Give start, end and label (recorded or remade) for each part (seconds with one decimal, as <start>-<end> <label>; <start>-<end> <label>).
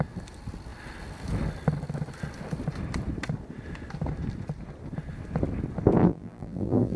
0.0-6.0 recorded; 6.0-7.0 remade